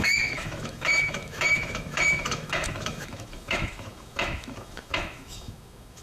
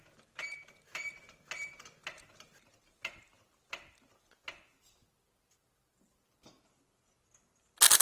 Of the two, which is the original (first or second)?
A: second